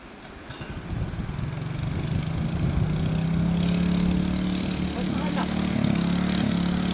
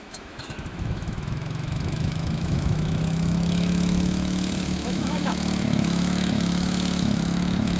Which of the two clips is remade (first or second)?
second